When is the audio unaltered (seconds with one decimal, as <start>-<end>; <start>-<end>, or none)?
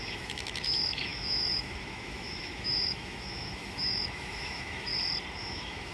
4.9-5.4